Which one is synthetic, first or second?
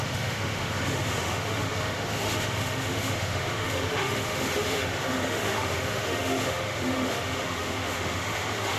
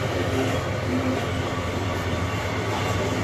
first